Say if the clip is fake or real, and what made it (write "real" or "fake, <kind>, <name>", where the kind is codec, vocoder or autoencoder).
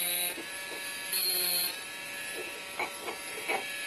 real